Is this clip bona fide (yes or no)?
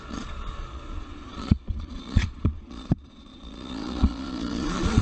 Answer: no